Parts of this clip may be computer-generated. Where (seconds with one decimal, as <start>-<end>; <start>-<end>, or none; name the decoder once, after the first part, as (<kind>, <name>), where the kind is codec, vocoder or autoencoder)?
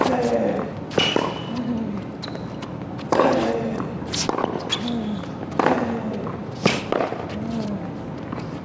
none